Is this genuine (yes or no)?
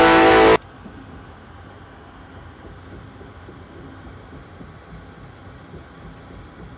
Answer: yes